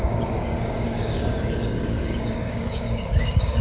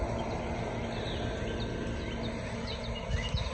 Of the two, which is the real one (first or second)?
second